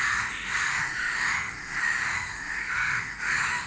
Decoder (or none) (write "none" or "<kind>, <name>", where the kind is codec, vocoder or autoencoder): autoencoder, DAC-VAE